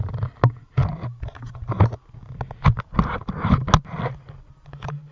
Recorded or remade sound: recorded